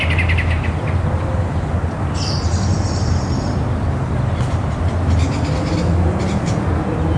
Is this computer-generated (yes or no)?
no